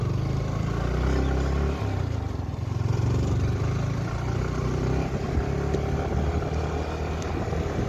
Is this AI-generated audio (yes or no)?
no